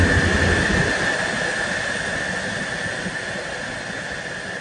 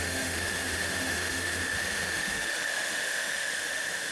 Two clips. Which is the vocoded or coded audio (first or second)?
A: second